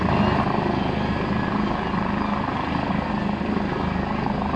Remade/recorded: recorded